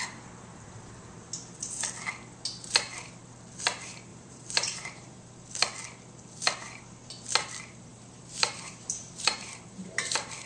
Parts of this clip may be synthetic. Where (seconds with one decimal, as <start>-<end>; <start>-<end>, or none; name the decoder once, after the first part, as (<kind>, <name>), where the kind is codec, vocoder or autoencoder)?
4.1-5.1 (vocoder, BigVGAN v2); 7.9-10.5